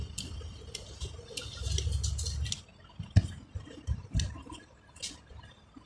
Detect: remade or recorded recorded